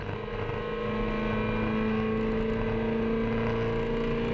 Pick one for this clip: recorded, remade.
recorded